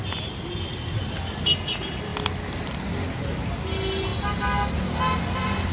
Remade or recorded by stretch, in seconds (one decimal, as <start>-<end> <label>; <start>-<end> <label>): 0.0-5.7 recorded